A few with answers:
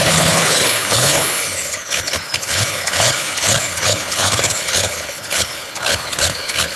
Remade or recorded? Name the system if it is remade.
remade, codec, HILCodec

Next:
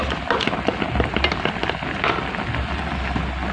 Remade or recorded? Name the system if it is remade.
recorded